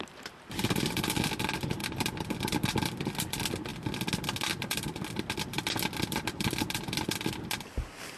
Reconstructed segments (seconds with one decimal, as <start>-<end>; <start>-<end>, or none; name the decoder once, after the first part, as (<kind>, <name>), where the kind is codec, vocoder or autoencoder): none

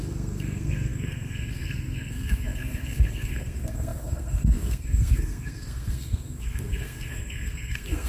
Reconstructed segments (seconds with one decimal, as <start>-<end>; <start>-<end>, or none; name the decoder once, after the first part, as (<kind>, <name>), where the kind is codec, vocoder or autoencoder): 0.0-8.1 (codec, SNAC)

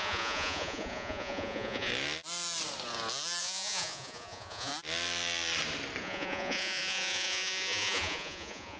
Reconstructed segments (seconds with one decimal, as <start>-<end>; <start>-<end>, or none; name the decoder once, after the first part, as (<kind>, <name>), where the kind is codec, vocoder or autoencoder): 0.0-1.9 (vocoder, Vocos); 3.4-4.7; 6.0-8.8

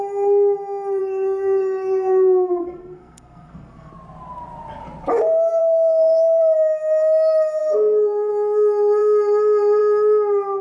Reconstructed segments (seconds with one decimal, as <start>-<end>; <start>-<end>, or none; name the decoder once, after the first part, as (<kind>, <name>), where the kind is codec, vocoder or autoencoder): 1.0-3.9 (codec, SNAC); 5.6-6.4; 7.6-8.3

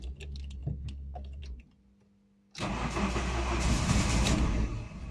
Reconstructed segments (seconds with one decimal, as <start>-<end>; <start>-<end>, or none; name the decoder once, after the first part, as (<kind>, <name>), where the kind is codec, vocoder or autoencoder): none